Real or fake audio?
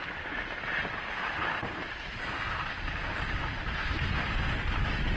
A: real